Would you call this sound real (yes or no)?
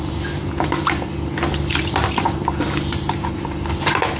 yes